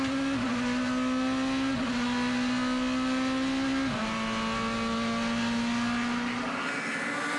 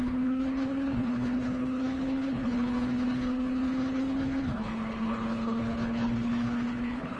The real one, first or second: first